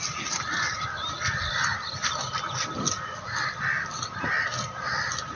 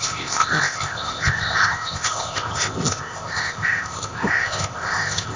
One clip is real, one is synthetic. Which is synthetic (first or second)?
second